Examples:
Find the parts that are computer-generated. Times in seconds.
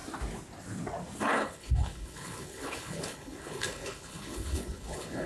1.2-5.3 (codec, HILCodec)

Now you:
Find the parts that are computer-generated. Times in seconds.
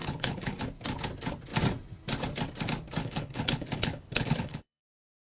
0.0-0.6 (codec, HILCodec); 3.0-4.8